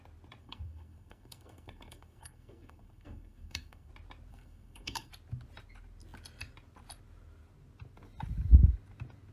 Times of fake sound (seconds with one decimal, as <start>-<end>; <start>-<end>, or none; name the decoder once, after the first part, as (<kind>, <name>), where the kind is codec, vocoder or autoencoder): 0.4-3.9 (codec, SNAC); 4.3-5.1